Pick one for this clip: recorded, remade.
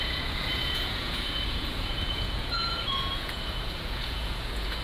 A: remade